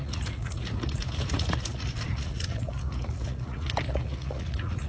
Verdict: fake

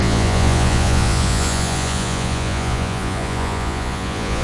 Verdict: fake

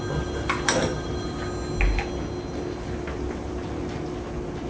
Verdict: real